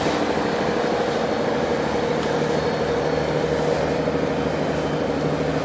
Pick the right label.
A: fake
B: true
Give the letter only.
B